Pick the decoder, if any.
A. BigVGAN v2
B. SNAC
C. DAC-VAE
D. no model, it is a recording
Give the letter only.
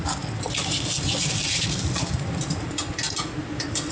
D